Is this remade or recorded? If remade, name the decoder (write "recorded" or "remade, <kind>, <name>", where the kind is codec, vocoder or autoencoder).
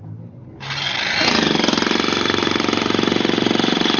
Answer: recorded